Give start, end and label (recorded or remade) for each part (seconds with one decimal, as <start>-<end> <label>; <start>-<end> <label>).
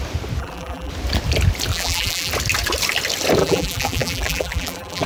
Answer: 0.0-0.4 recorded; 0.4-0.9 remade; 0.9-1.7 recorded; 1.7-2.3 remade; 2.3-3.4 recorded; 3.4-5.1 remade